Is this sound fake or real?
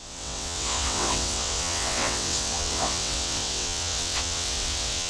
fake